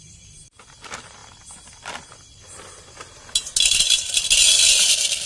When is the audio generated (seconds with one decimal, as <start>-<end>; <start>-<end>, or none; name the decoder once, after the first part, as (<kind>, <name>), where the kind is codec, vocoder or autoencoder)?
none